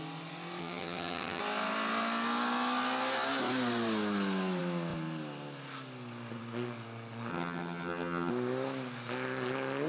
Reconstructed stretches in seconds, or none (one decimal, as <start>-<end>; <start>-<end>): 0.6-1.4; 7.3-8.3